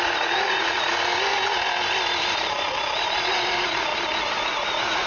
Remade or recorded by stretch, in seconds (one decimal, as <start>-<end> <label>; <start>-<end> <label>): 0.0-0.9 remade; 0.9-3.2 recorded; 3.2-3.9 remade; 3.9-4.4 recorded; 4.4-5.1 remade